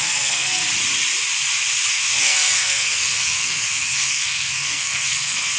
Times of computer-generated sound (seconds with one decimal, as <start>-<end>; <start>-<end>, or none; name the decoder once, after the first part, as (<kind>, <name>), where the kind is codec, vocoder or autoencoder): 0.0-0.6 (codec, SNAC); 1.9-5.6